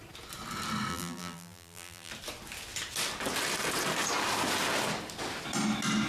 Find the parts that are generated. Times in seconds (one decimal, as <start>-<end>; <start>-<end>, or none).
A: 0.9-2.1

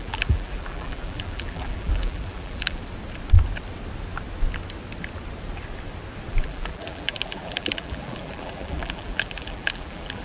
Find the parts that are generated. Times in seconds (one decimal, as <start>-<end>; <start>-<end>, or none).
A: 0.0-2.8; 6.3-10.2

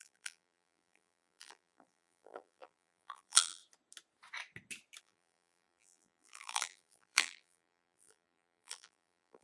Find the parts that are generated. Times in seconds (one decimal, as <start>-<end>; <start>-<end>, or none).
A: 0.0-3.6; 5.0-9.4

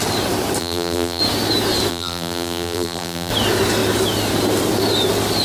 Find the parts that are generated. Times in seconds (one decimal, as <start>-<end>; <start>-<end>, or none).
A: 0.6-1.2; 1.9-3.3

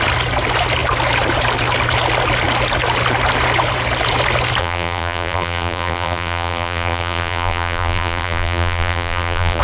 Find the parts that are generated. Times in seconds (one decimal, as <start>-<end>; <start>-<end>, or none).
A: 4.6-9.6

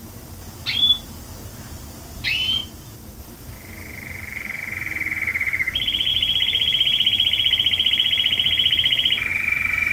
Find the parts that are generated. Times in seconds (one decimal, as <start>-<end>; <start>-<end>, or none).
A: 0.0-2.6; 3.2-4.6; 5.3-9.9

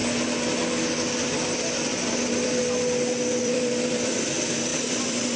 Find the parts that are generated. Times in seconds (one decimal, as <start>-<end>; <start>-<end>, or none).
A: 2.1-2.6; 3.4-5.4